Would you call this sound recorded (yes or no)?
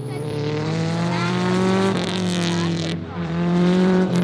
no